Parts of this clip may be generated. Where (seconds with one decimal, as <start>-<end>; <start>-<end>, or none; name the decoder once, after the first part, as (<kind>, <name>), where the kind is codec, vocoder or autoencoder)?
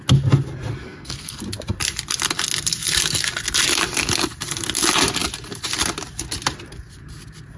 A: 0.7-1.4 (codec, SNAC)